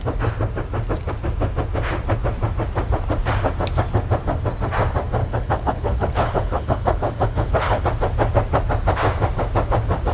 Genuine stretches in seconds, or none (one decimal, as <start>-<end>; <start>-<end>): 0.0-5.2; 7.8-10.1